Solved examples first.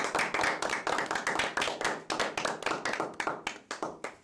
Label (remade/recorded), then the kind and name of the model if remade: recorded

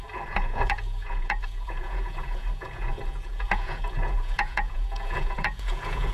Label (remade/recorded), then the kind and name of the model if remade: remade, vocoder, Vocos